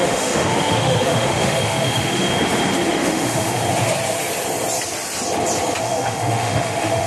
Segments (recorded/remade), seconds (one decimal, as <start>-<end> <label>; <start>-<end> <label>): 0.0-2.3 remade; 2.3-2.9 recorded; 2.9-3.6 remade; 3.6-5.8 recorded; 5.8-7.1 remade